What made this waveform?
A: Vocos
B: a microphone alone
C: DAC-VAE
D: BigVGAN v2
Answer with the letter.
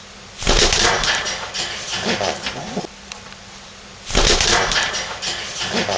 B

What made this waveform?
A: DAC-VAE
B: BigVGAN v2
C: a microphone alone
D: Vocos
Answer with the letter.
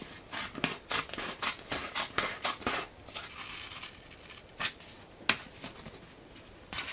C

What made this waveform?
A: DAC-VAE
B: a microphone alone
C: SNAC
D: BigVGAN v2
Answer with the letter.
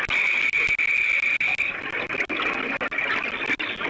B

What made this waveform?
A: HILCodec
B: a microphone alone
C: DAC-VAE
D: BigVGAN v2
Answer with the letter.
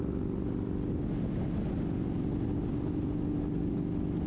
B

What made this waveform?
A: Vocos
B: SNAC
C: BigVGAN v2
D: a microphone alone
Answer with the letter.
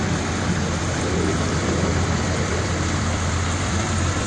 C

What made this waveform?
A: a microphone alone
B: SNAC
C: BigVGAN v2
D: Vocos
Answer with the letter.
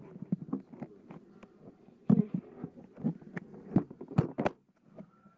A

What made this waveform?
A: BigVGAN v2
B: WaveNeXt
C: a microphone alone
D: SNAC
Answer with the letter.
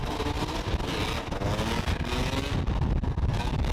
C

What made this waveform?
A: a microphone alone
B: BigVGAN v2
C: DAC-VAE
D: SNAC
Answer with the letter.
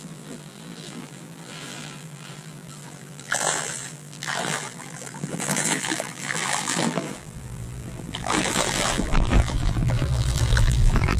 B